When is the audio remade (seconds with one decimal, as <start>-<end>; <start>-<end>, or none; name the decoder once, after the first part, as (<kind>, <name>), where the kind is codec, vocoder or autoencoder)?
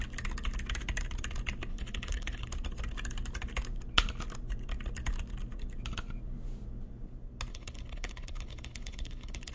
1.7-2.5 (codec, HILCodec); 7.5-9.5